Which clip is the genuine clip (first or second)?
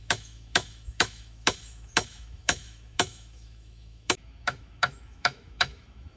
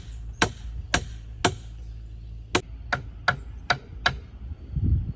second